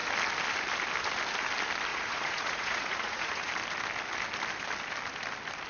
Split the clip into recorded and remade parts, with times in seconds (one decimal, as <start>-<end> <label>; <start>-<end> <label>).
0.0-1.9 recorded; 1.9-3.5 remade; 3.5-5.7 recorded